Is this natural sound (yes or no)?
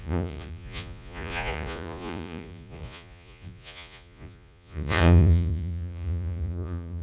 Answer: no